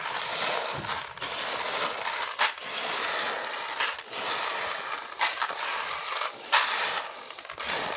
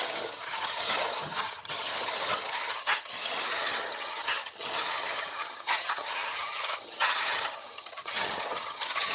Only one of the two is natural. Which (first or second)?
first